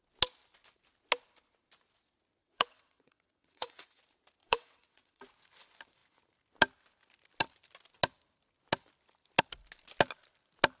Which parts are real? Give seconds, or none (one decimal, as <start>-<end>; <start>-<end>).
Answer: 0.0-2.4; 4.0-4.4; 5.2-10.8

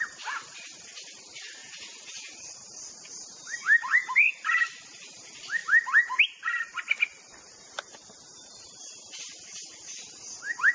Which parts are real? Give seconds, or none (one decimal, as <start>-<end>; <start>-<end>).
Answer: 0.0-1.6; 2.3-10.7

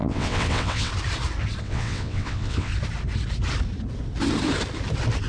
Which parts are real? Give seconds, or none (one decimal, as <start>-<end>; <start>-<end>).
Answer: 0.9-1.6; 2.7-5.3

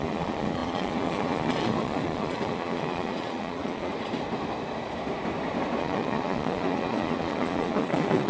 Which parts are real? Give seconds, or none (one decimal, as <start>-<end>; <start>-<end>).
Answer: 3.9-5.8

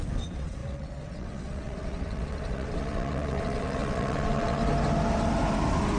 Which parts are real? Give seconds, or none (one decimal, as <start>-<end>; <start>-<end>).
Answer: 4.6-6.0

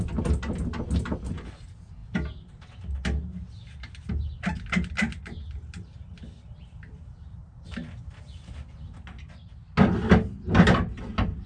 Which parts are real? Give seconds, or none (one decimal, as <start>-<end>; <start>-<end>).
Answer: 0.0-11.5